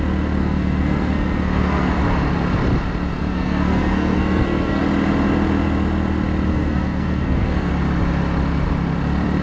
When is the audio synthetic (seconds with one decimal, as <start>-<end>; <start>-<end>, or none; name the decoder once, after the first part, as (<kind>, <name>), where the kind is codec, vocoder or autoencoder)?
0.4-1.9 (codec, SNAC); 3.1-4.8; 6.5-7.7